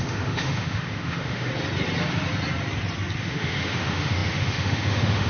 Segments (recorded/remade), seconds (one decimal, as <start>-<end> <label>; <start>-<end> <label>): 0.0-1.5 remade; 1.5-3.2 recorded; 3.2-5.3 remade